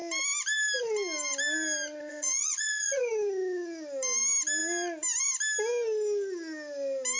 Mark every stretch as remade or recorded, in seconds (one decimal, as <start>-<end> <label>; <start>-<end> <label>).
0.0-2.1 recorded; 2.1-3.1 remade; 3.1-7.2 recorded